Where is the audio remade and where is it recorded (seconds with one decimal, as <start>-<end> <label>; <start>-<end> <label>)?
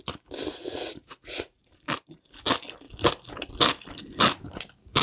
0.0-0.6 recorded; 0.6-1.6 remade; 1.6-5.0 recorded